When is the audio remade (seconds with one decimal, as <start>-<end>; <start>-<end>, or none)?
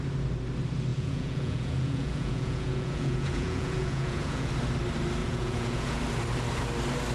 0.9-4.5; 5.2-6.0